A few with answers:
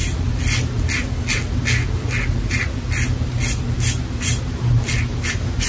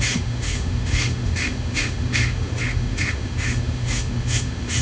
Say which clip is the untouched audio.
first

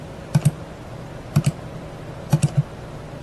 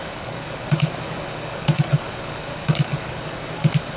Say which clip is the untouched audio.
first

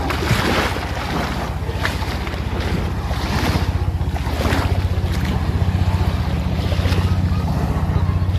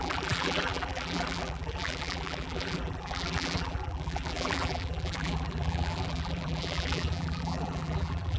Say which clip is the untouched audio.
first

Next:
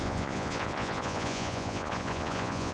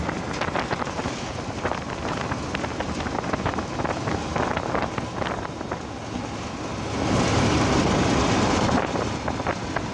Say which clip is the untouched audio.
second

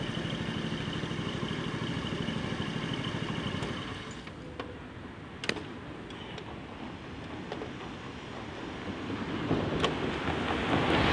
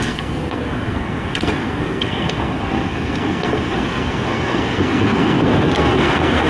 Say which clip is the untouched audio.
first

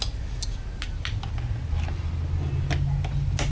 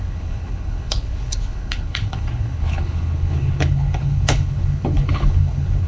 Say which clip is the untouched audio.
first